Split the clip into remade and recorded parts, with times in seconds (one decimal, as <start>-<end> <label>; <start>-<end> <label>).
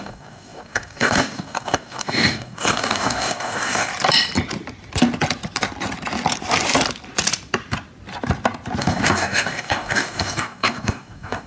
0.0-3.9 remade; 3.9-8.8 recorded; 8.8-11.5 remade